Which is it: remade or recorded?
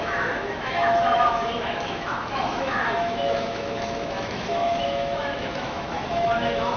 remade